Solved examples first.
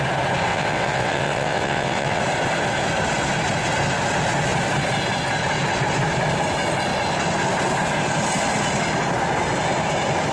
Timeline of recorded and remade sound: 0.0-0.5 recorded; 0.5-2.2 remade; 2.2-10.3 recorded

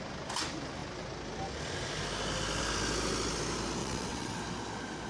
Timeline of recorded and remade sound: 0.0-3.8 recorded; 3.8-4.4 remade; 4.4-5.1 recorded

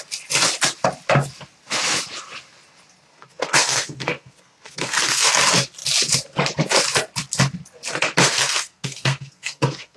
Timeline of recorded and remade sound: 0.0-3.1 recorded; 3.1-5.3 remade; 5.3-8.2 recorded; 8.2-10.0 remade

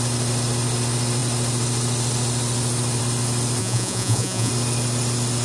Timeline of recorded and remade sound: 0.0-3.6 recorded; 3.6-4.5 remade; 4.5-5.4 recorded

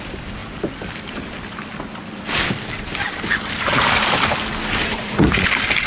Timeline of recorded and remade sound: 0.0-4.9 recorded; 4.9-5.5 remade; 5.5-5.9 recorded

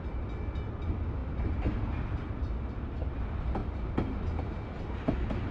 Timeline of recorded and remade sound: 0.0-5.5 recorded